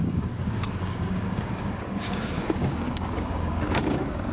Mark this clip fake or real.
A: fake